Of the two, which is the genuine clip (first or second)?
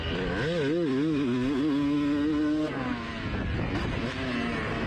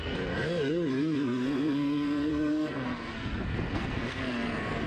first